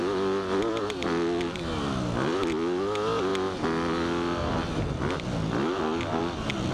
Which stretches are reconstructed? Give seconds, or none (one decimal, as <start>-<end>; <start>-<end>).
none